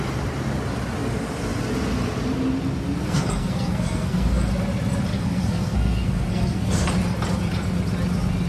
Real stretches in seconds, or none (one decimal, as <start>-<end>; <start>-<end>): 0.0-3.0; 4.5-5.1; 6.9-8.5